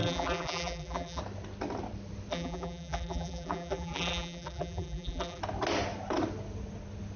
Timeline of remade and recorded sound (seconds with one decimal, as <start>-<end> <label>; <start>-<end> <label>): 0.0-1.2 remade; 1.2-2.3 recorded; 2.3-5.4 remade; 5.4-7.2 recorded